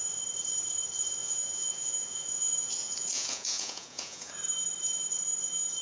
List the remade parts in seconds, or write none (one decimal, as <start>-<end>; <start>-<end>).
1.2-4.3